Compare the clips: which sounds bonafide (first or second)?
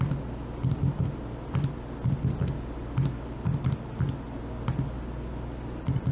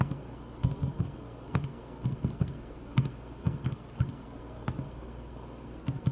first